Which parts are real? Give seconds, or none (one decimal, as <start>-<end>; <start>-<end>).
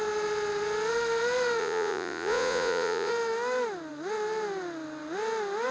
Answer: 0.0-1.6; 3.1-5.7